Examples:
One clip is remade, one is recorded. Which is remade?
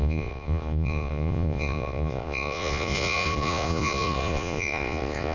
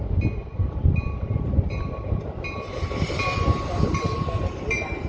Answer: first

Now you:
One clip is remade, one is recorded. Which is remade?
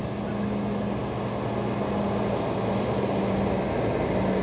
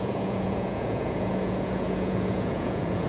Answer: second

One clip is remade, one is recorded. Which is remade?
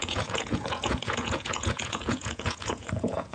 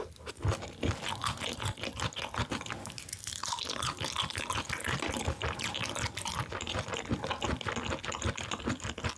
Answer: first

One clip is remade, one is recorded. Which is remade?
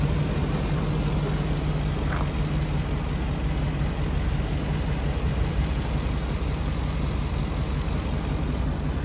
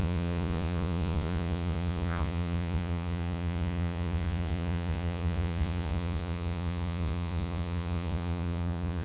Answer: second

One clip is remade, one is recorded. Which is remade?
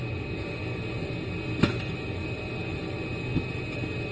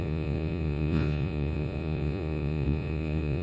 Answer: second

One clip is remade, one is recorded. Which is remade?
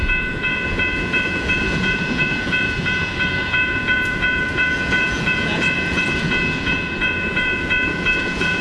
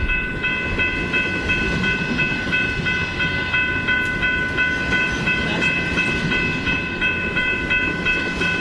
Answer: first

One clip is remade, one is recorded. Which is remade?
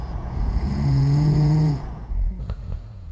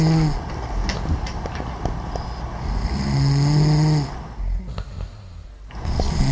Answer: first